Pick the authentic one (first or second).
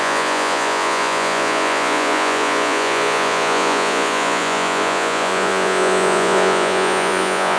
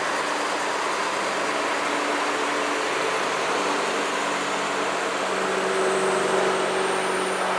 second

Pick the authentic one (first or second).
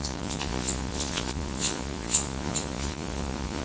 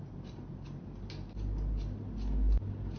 second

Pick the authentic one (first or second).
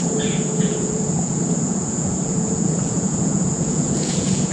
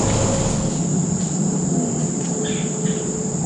second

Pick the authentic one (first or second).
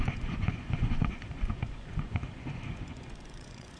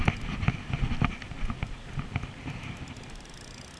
second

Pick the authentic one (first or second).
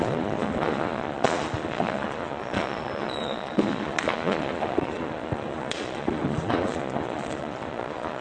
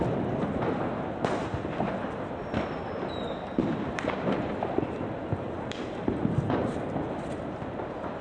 second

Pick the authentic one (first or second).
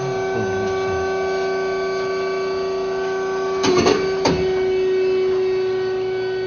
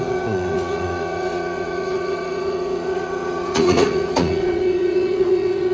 first